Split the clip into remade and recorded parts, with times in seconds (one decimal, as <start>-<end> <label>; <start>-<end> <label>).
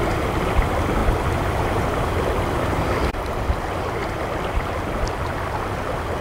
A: 0.0-6.2 recorded